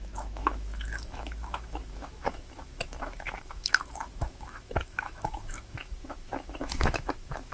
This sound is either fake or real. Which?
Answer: fake